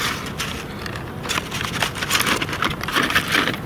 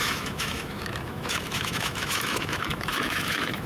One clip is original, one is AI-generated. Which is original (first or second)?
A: first